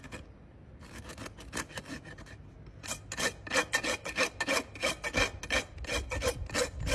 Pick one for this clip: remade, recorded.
recorded